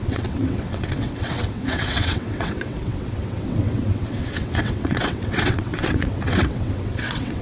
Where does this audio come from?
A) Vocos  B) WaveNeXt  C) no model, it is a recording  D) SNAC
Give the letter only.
B